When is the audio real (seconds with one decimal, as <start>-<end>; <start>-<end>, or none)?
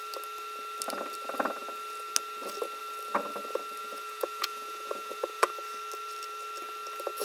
0.0-3.8; 5.5-7.2